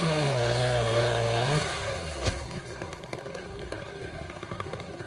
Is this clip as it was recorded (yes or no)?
no